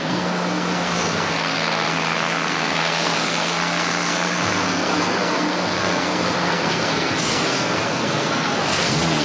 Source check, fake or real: fake